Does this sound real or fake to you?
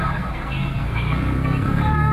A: fake